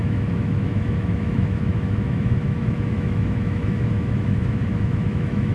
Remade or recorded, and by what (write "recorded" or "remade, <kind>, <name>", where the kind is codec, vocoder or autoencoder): remade, autoencoder, DAC-VAE